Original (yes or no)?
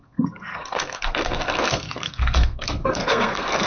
no